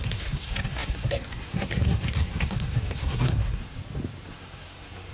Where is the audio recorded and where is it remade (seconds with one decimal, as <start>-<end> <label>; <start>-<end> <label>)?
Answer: 0.0-3.8 remade; 3.8-4.3 recorded; 4.3-5.1 remade